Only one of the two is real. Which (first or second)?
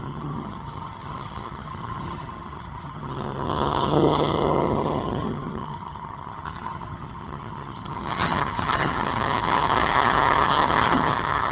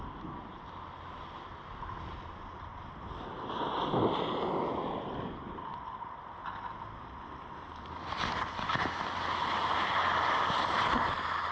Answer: second